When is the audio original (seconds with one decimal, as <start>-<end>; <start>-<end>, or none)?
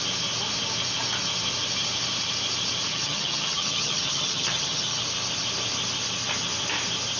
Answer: 0.0-2.9; 5.0-7.2